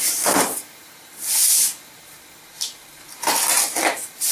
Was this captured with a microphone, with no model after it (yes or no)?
yes